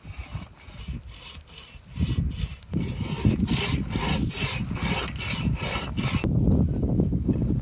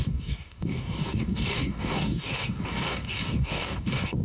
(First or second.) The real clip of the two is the first